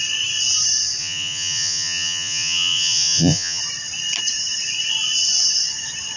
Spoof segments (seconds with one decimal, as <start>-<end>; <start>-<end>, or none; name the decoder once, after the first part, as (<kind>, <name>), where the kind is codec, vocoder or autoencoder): 1.0-3.6 (vocoder, Vocos)